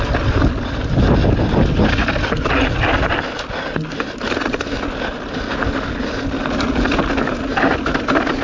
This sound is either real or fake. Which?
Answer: real